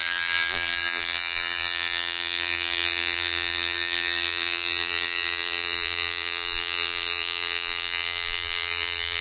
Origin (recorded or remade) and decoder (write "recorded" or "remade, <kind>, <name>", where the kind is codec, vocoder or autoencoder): remade, vocoder, BigVGAN v2